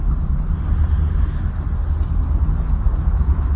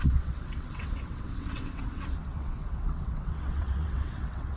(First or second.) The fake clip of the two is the second